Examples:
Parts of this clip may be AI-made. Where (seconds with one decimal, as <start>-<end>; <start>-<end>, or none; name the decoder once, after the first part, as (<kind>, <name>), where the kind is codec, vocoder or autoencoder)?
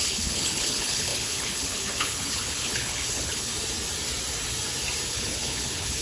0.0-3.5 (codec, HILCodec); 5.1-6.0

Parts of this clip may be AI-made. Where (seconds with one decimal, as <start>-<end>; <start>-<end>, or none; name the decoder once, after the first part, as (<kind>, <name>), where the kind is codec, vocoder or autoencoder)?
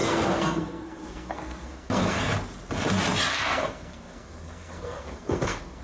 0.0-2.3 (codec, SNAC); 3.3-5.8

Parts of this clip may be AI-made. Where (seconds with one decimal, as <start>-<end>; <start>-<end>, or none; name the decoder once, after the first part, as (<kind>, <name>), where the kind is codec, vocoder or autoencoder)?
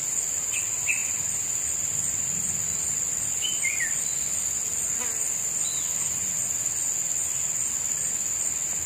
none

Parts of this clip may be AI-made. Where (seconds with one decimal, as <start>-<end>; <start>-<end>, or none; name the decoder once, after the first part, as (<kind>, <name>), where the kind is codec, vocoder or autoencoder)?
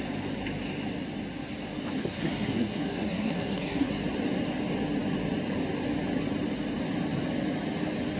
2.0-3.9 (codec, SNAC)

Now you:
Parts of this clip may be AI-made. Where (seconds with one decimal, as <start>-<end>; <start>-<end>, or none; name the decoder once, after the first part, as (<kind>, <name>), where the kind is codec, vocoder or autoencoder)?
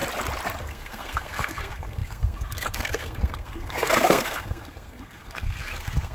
0.6-6.1 (codec, SNAC)